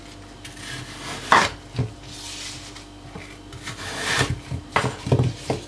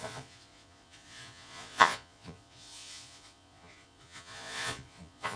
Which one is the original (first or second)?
first